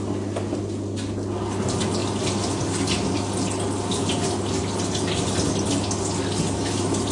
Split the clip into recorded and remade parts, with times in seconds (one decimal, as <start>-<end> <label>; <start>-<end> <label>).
0.0-7.1 recorded